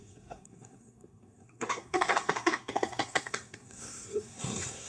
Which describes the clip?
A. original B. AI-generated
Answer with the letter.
B